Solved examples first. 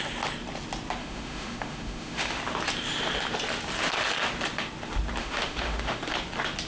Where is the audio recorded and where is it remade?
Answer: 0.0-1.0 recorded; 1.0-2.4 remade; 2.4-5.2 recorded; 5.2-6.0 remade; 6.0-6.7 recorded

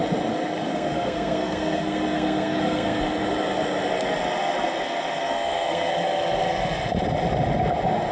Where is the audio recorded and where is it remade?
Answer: 0.0-0.7 recorded; 0.7-3.0 remade; 3.0-5.2 recorded; 5.2-5.9 remade; 5.9-8.1 recorded

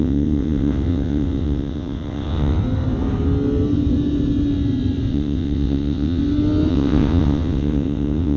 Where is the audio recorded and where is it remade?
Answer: 0.0-2.6 remade; 2.6-5.1 recorded; 5.1-6.2 remade; 6.2-6.7 recorded; 6.7-8.4 remade

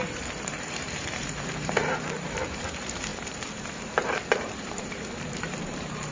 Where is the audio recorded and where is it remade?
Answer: 0.0-6.1 remade

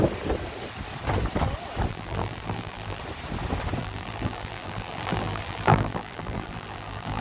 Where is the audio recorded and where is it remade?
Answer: 0.0-1.9 recorded; 1.9-3.0 remade; 3.0-3.8 recorded; 3.8-7.2 remade

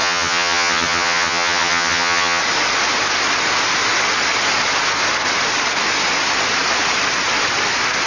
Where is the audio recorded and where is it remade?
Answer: 0.0-2.4 remade; 2.4-8.1 recorded

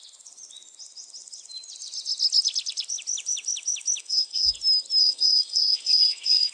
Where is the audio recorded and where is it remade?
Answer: 0.0-4.0 recorded; 4.0-4.5 remade; 4.5-5.0 recorded; 5.0-6.5 remade